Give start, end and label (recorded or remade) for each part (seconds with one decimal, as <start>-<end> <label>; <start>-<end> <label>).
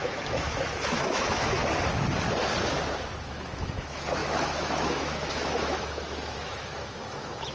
0.0-1.6 remade; 1.6-3.2 recorded; 3.2-7.5 remade